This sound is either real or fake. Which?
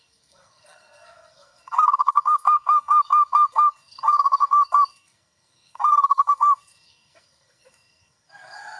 fake